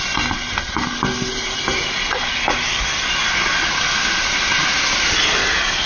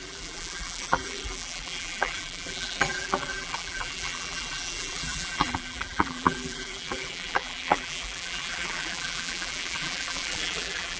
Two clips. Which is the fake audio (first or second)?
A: second